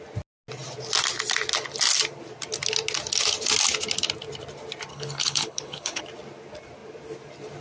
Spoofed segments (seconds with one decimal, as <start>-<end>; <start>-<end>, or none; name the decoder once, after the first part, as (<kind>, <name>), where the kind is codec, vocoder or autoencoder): 4.9-6.0 (codec, HILCodec)